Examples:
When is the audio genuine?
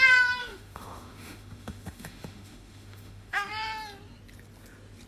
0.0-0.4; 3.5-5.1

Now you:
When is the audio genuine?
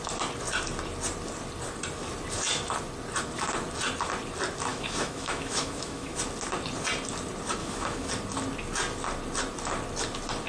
0.0-4.7; 6.2-7.6; 8.1-10.5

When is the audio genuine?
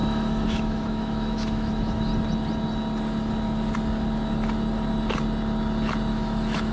2.1-6.1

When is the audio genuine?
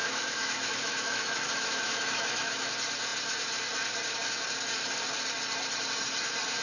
2.7-6.6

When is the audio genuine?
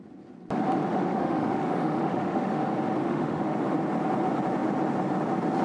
0.0-0.9; 2.6-3.0; 3.6-5.6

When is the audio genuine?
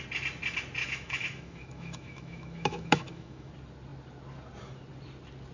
0.0-0.8; 3.5-5.5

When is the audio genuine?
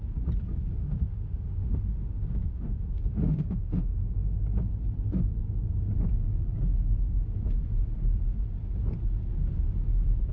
0.0-0.7; 4.4-10.3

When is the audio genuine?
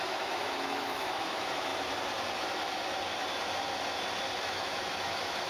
1.7-4.4